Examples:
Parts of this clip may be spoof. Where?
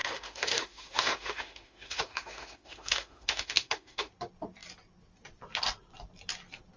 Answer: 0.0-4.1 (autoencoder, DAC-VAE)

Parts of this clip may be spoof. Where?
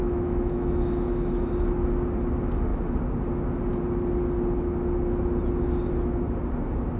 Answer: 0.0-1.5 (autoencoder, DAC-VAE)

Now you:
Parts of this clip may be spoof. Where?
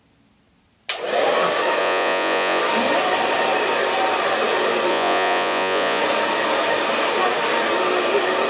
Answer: 1.8-2.6 (vocoder, Vocos); 4.9-6.0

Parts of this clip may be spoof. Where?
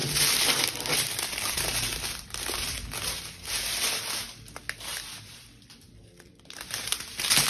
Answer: 0.0-1.6 (vocoder, BigVGAN v2)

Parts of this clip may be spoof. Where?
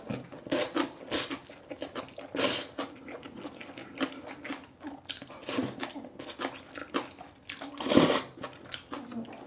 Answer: none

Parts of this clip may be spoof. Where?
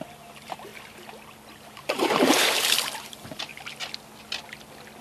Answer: 0.0-0.7 (vocoder, BigVGAN v2); 1.7-3.5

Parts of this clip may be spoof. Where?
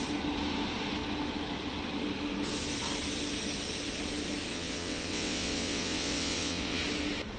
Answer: 4.5-6.8 (vocoder, WaveNeXt)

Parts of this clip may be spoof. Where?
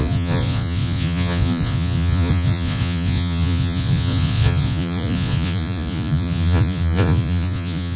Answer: 0.0-8.0 (vocoder, Vocos)